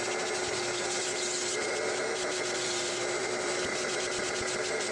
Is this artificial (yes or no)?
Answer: no